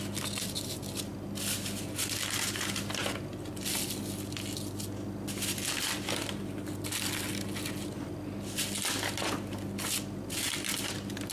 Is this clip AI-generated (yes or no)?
no